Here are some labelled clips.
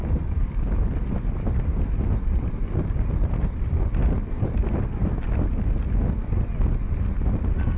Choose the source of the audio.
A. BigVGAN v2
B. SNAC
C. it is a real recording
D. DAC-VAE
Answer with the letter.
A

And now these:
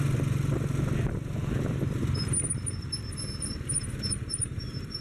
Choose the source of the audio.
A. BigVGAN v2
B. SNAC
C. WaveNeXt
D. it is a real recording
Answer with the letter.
D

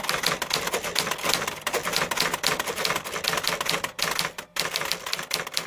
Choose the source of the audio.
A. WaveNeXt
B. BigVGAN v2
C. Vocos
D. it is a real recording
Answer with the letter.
D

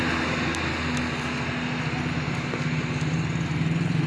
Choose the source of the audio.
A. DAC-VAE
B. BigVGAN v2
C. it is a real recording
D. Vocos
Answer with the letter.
C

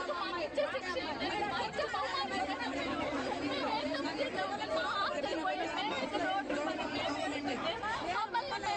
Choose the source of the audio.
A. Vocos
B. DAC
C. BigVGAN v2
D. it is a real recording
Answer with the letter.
C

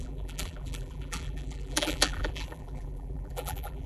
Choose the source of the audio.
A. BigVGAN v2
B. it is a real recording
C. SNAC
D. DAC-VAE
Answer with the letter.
A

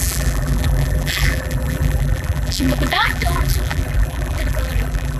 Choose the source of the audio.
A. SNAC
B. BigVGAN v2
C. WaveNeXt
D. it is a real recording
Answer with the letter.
B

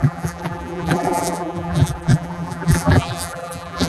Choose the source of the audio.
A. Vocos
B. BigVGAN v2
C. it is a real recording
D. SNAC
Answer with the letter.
B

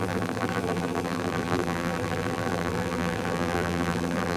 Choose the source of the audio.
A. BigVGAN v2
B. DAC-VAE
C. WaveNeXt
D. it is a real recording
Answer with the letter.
A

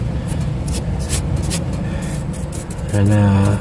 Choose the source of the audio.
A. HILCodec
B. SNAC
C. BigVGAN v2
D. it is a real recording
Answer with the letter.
D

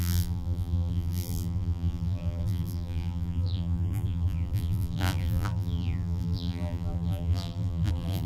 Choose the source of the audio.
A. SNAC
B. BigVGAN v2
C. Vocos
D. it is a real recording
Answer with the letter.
B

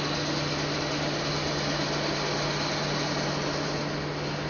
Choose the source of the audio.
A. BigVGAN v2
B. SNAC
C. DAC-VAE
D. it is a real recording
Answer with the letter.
D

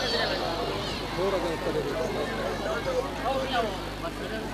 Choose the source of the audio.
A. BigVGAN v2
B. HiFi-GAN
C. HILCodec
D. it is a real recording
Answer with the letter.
A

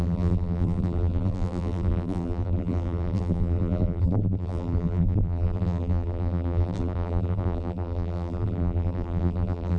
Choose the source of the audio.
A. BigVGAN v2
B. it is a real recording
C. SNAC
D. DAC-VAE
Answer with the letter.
A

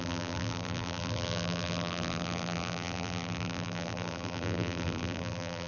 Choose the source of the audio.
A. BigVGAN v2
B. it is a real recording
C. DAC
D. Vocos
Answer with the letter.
A